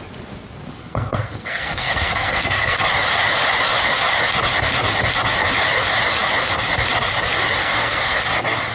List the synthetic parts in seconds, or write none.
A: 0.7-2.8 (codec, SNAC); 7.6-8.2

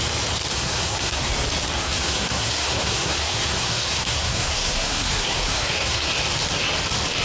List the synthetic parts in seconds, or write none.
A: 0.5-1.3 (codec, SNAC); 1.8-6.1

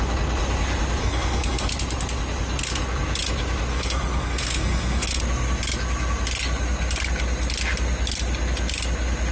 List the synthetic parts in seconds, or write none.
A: 1.0-1.7 (codec, SNAC); 3.7-5.2